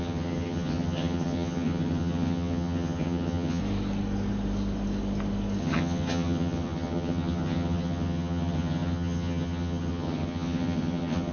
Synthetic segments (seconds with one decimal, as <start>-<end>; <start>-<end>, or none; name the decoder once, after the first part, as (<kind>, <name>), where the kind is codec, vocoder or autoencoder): 0.0-3.6 (vocoder, HiFi-GAN); 5.6-11.3